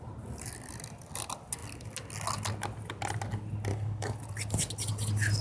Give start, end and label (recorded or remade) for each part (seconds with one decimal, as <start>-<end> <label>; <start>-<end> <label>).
0.0-3.7 recorded; 3.7-4.2 remade; 4.2-5.4 recorded